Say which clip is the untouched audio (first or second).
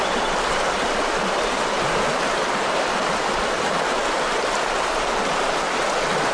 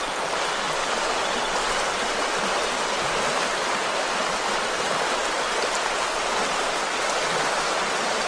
second